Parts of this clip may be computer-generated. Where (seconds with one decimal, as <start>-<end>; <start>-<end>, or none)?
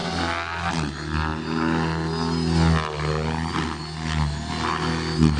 none